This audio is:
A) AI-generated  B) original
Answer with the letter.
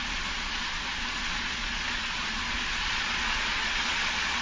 A